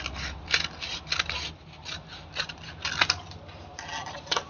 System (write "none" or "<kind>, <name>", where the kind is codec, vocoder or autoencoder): none